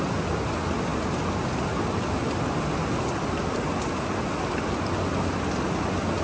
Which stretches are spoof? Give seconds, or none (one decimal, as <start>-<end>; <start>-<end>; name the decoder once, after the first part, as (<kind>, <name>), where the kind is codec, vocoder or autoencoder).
none